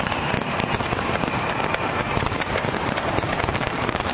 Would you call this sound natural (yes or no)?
no